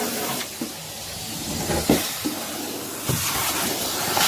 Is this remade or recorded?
recorded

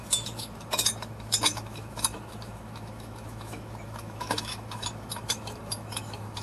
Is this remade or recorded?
remade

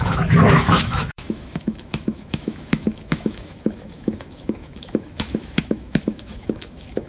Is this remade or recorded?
remade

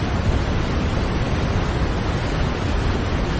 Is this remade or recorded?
recorded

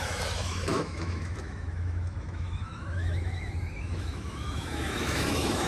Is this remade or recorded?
remade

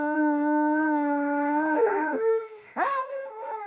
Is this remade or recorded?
remade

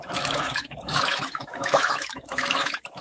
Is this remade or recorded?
remade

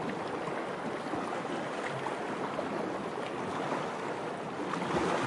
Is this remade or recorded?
recorded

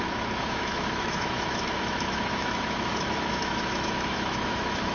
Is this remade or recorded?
remade